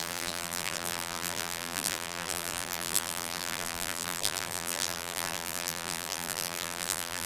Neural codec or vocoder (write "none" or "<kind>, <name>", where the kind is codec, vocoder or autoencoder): vocoder, BigVGAN v2